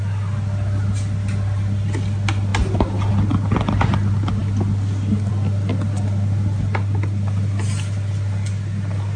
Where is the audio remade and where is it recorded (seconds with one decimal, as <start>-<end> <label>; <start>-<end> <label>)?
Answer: 0.0-9.2 recorded